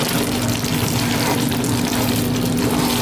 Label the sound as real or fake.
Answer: fake